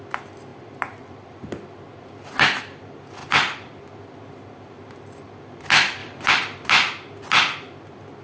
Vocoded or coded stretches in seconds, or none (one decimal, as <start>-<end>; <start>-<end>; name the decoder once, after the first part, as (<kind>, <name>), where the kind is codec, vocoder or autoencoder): 0.5-1.4 (vocoder, BigVGAN v2); 3.2-3.8; 6.0-6.7

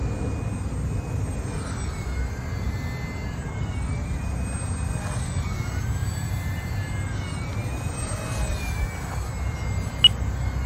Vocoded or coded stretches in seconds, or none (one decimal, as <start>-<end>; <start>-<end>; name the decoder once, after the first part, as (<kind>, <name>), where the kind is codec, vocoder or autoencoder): 6.0-6.7 (vocoder, BigVGAN v2)

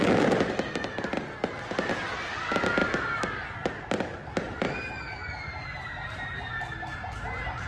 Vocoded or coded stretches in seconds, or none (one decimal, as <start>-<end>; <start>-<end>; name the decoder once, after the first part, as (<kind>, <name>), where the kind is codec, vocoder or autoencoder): none

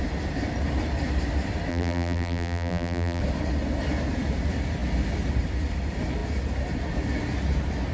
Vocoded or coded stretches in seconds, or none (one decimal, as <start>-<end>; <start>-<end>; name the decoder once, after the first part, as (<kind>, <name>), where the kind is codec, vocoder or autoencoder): 1.7-3.2 (vocoder, BigVGAN v2)

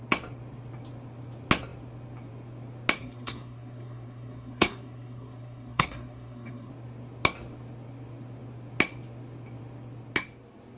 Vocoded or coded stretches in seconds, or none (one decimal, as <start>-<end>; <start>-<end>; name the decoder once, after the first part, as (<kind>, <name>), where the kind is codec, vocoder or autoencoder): 3.0-6.7 (codec, SNAC)